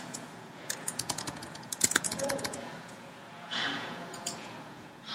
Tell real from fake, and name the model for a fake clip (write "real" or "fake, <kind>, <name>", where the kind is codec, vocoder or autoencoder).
fake, vocoder, Vocos